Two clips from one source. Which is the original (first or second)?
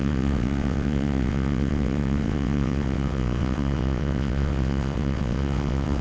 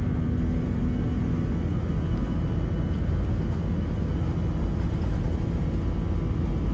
second